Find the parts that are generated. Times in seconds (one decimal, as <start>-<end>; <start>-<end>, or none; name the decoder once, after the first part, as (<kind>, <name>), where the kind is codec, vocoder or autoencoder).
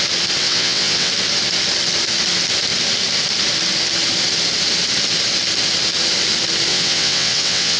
0.4-1.1 (vocoder, WaveNeXt); 6.7-7.8